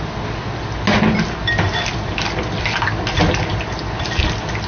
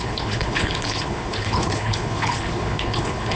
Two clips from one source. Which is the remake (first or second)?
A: second